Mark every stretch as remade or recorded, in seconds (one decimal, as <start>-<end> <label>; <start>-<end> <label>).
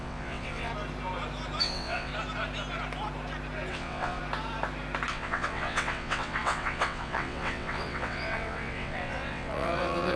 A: 0.0-0.7 remade; 0.7-1.6 recorded; 1.6-2.1 remade; 2.1-3.7 recorded; 3.7-4.2 remade; 4.2-5.1 recorded; 5.1-10.2 remade